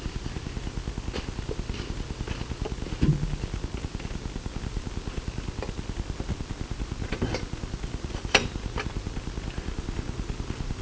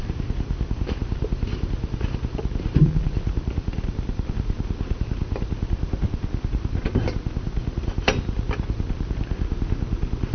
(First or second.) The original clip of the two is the first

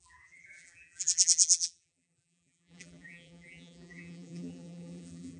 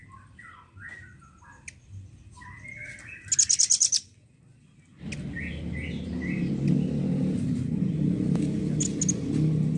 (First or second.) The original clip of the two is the second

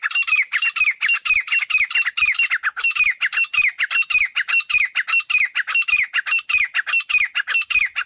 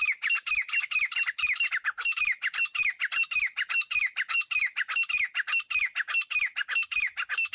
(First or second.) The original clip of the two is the first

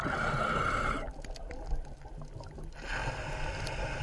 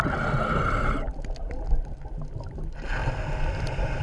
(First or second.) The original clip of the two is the first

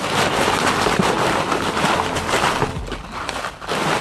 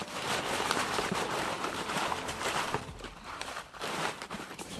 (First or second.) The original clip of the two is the first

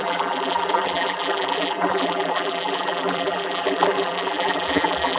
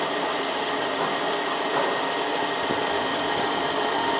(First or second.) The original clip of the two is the second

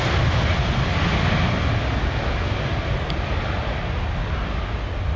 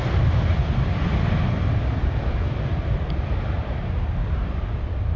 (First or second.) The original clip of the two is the first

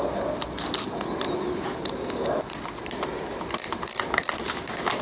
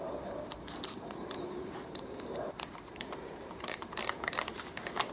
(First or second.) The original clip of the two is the first